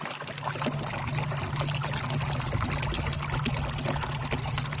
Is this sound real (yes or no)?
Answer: yes